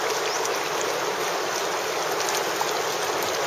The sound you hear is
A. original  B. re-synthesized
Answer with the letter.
A